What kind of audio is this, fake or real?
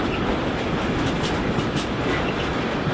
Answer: real